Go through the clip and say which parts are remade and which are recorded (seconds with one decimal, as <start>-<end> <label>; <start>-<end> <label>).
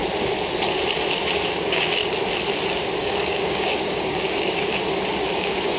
0.0-1.5 recorded; 1.5-2.0 remade; 2.0-3.0 recorded; 3.0-4.7 remade; 4.7-5.3 recorded; 5.3-5.8 remade